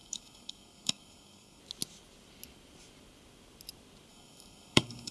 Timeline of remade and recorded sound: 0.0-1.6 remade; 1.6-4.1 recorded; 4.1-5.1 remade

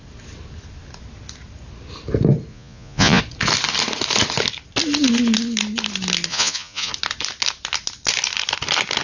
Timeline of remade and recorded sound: 0.0-2.5 recorded; 2.5-3.2 remade; 3.2-6.3 recorded; 6.3-6.9 remade; 6.9-9.0 recorded